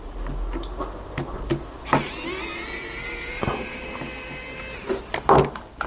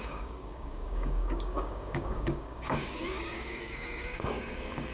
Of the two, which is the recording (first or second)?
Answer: first